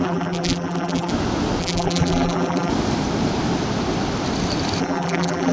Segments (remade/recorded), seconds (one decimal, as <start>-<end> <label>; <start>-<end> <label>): 0.0-1.1 remade; 1.1-1.6 recorded; 1.6-2.7 remade; 2.7-4.8 recorded; 4.8-5.5 remade